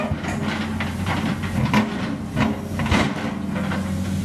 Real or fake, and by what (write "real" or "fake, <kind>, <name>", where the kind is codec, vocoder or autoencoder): real